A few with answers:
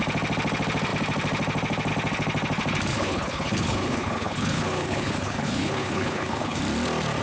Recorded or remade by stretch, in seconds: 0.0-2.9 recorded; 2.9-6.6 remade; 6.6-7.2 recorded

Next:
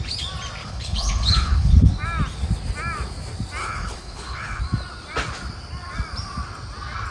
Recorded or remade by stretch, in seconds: 0.0-0.6 recorded; 0.6-1.9 remade; 1.9-3.6 recorded; 3.6-4.6 remade; 4.6-7.1 recorded

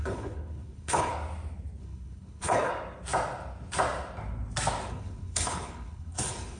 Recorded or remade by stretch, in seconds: 0.0-1.1 remade; 1.1-1.8 recorded; 1.8-2.7 remade; 2.7-4.9 recorded; 4.9-6.6 remade

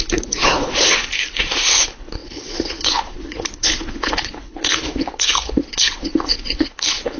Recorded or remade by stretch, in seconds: 0.0-7.2 remade